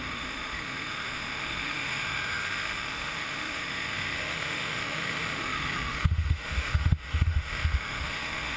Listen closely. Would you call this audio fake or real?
fake